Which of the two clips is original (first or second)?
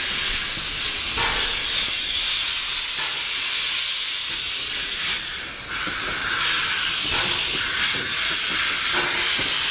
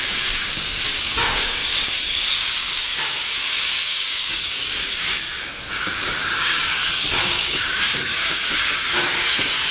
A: first